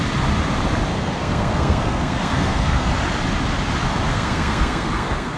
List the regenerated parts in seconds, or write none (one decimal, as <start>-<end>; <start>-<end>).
0.9-2.9; 4.1-5.4